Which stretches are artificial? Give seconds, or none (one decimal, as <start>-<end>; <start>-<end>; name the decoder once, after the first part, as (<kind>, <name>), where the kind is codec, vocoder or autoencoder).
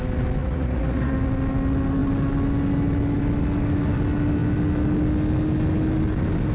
0.4-1.1 (vocoder, Vocos)